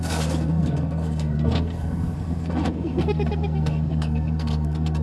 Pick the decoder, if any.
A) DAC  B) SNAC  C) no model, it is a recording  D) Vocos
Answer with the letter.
B